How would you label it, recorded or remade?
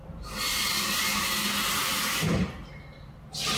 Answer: recorded